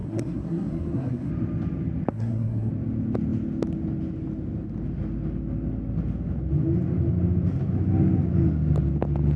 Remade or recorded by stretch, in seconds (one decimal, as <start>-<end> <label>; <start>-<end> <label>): 0.0-1.3 remade; 1.3-2.1 recorded; 2.1-2.7 remade; 2.7-9.4 recorded